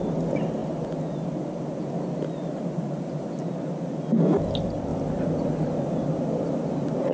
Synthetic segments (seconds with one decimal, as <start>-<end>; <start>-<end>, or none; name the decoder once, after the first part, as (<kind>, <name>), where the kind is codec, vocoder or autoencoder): none

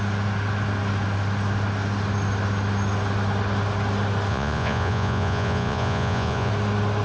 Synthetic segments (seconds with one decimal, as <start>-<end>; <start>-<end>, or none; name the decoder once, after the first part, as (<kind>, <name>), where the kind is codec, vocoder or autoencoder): 4.3-6.5 (vocoder, Vocos)

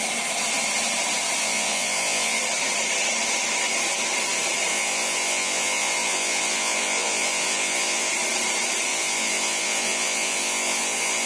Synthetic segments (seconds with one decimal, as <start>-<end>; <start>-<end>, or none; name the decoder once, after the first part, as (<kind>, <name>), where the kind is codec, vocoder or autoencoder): 1.4-2.4 (vocoder, Vocos); 4.7-8.1; 8.9-11.3

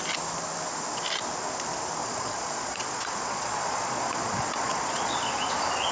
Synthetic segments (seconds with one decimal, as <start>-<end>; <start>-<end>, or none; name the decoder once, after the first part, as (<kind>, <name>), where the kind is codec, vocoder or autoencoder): 2.0-5.5 (vocoder, Vocos)

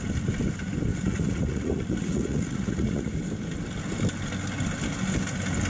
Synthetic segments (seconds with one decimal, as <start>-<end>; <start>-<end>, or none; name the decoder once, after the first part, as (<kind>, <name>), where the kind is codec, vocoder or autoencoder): 0.9-3.1 (vocoder, Vocos)

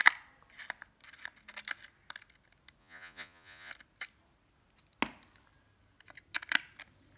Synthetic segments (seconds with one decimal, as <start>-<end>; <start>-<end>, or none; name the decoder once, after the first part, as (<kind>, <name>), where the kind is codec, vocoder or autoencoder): 2.8-3.7 (vocoder, Vocos)

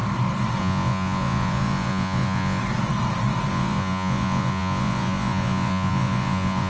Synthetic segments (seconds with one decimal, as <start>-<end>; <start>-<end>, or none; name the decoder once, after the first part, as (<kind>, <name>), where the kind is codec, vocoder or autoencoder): 0.6-2.6 (vocoder, Vocos); 3.5-6.7

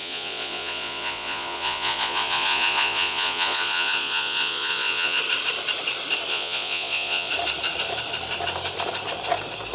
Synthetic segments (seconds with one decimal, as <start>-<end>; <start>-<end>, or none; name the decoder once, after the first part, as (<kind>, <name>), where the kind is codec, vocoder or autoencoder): 0.0-5.2 (vocoder, Vocos); 6.3-7.3